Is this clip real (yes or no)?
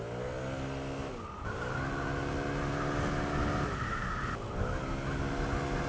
yes